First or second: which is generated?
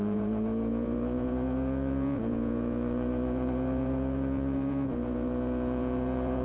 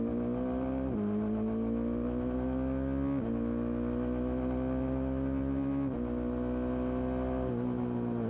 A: first